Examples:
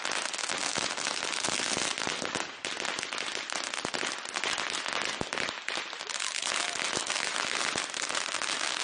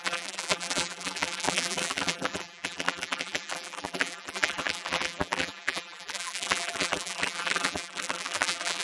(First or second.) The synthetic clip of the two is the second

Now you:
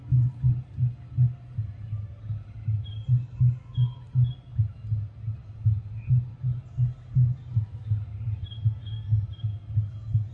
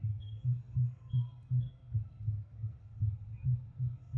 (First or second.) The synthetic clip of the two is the second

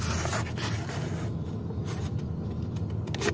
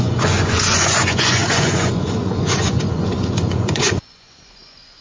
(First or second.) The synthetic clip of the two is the second